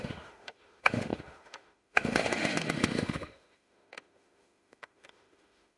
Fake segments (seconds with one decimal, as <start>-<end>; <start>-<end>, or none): 0.0-5.8